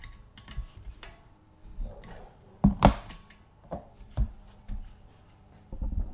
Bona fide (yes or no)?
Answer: no